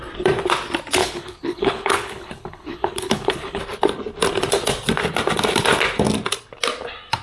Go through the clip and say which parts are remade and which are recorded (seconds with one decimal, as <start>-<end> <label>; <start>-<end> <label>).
0.0-1.0 recorded; 1.0-3.6 remade; 3.6-7.2 recorded

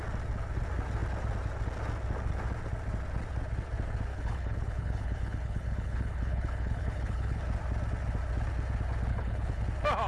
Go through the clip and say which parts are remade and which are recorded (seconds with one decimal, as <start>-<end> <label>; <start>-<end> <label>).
0.0-4.1 recorded; 4.1-7.4 remade; 7.4-9.1 recorded; 9.1-9.6 remade; 9.6-10.1 recorded

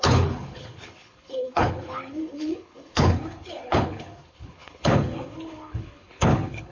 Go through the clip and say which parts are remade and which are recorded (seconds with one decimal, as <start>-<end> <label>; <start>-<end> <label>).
0.0-6.7 remade

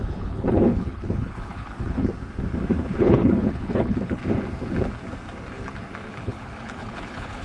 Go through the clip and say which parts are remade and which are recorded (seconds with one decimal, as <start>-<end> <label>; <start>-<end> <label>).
0.0-2.1 remade; 2.1-3.0 recorded; 3.0-4.2 remade; 4.2-6.1 recorded; 6.1-7.4 remade

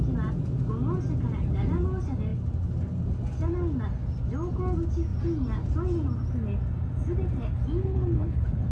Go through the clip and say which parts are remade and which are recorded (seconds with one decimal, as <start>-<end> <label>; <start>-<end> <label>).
0.0-7.8 recorded; 7.8-8.7 remade

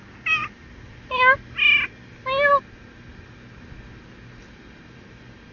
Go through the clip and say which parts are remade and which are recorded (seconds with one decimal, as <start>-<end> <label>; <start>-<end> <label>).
0.0-5.5 recorded

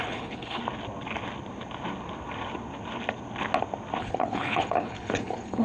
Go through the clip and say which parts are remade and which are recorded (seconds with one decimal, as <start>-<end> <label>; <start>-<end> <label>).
0.0-0.6 remade; 0.6-4.0 recorded; 4.0-5.6 remade

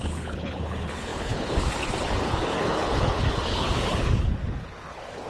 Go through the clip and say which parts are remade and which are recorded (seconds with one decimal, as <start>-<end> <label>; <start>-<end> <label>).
0.0-5.3 remade